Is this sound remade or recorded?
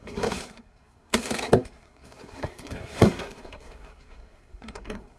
remade